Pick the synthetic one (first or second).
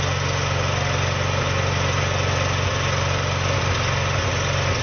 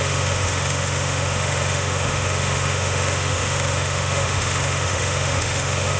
second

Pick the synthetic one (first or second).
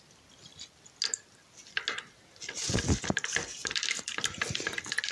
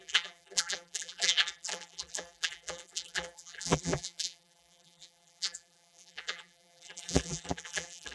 second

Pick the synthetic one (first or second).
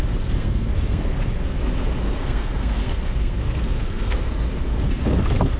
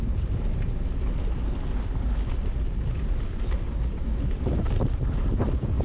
first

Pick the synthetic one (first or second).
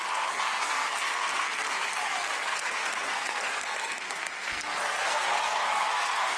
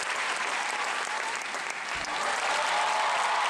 first